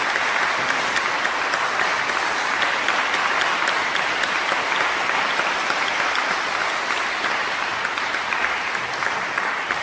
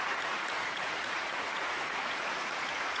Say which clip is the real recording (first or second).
first